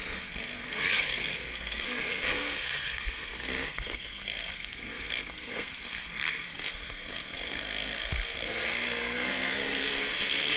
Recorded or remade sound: remade